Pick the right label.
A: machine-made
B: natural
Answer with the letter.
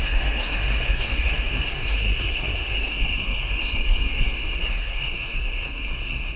A